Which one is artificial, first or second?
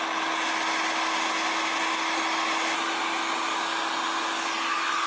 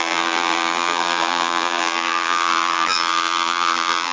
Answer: second